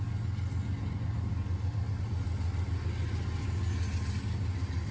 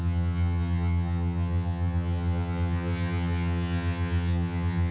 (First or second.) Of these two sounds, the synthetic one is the second